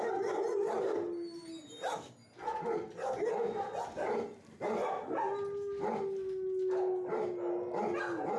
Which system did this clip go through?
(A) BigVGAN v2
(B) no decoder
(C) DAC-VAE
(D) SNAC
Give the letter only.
B